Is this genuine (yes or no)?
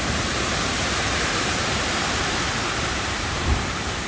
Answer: no